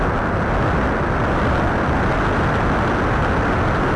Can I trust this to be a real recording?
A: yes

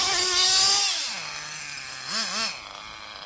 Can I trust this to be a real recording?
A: yes